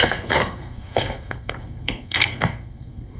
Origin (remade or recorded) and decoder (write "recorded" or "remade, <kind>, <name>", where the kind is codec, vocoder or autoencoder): remade, codec, SNAC